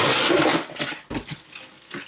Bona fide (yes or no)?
yes